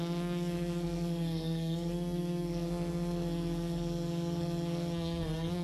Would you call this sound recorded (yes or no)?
no